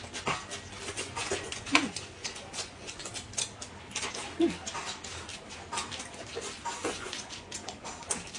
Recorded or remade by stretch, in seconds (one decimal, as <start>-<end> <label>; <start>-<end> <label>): 0.0-0.9 recorded; 0.9-3.1 remade; 3.1-6.8 recorded; 6.8-7.9 remade; 7.9-8.4 recorded